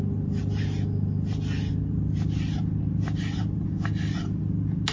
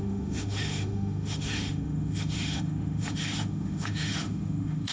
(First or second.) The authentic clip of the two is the first